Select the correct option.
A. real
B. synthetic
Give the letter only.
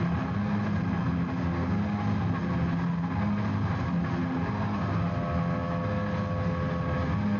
A